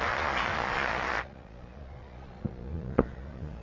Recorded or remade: remade